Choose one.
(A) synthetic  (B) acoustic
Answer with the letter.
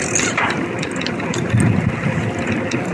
B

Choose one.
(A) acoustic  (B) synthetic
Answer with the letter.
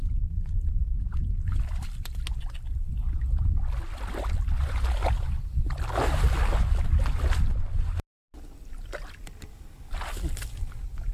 A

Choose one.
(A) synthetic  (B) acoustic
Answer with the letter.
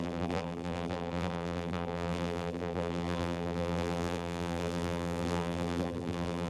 A